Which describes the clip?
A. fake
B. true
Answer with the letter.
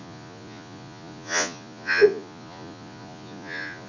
A